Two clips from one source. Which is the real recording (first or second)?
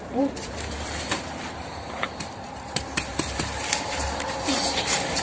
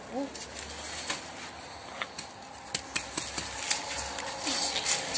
second